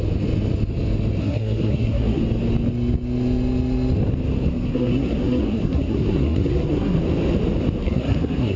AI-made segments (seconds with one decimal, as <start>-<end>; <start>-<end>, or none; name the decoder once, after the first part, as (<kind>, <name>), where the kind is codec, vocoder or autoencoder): 1.2-2.2 (codec, SNAC); 4.5-7.0; 7.8-8.6